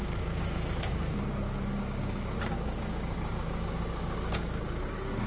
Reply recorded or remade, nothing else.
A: remade